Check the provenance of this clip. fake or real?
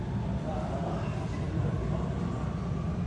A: real